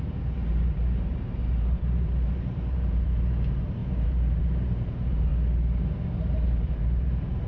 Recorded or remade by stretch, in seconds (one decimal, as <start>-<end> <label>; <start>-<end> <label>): 0.0-5.3 remade; 5.3-6.3 recorded; 6.3-7.5 remade